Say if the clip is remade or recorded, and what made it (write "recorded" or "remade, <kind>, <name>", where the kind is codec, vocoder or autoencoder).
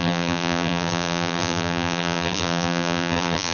remade, vocoder, BigVGAN v2